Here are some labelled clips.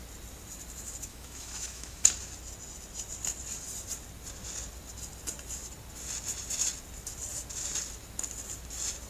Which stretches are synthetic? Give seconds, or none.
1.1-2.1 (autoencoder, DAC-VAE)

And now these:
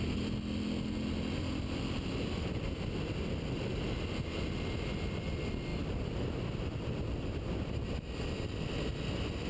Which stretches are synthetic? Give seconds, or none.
none

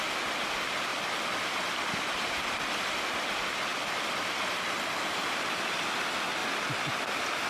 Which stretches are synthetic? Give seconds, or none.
none